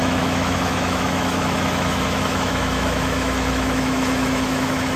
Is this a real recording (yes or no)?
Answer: no